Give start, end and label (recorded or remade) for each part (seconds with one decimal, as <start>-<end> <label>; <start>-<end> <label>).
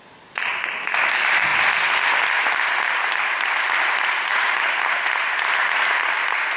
0.0-6.6 recorded